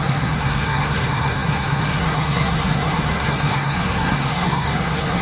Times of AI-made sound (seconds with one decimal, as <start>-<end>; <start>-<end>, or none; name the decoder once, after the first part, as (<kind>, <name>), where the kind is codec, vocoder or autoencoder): 0.0-5.2 (codec, SNAC)

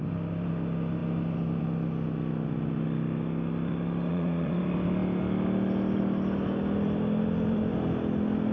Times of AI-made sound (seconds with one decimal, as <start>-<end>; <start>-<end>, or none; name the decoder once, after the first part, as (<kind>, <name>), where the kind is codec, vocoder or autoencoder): 4.1-4.6 (vocoder, Vocos)

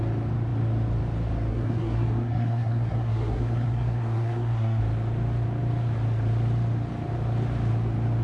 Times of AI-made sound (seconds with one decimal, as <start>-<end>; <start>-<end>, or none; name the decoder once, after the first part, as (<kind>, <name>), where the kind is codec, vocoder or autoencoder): 1.5-4.8 (codec, SNAC)

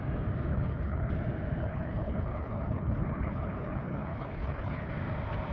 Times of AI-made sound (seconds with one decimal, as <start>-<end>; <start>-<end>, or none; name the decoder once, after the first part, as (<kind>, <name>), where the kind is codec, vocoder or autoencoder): 0.5-1.1 (codec, HILCodec); 1.6-4.9

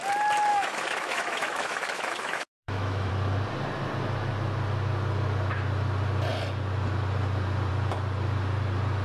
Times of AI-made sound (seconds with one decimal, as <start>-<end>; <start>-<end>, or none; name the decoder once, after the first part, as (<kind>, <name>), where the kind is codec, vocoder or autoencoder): 0.5-3.1 (autoencoder, DAC-VAE)